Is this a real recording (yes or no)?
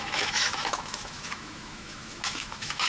no